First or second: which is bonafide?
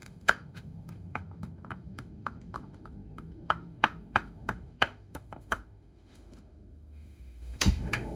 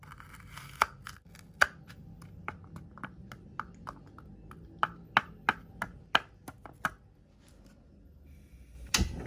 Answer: second